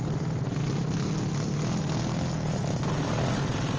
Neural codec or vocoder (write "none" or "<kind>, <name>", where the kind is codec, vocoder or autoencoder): none